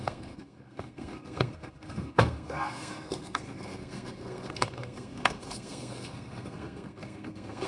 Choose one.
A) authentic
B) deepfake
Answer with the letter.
B